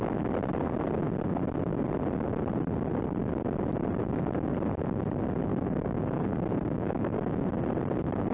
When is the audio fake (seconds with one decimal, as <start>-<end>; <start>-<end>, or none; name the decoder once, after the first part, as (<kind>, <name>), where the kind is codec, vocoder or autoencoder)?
5.5-7.5 (codec, DAC)